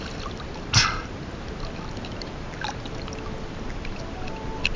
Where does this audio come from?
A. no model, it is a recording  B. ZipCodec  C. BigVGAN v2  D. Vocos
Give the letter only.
A